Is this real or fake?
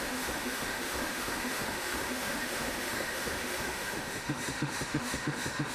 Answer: fake